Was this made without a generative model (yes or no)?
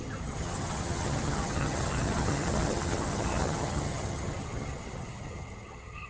no